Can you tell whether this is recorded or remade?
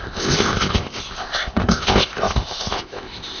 remade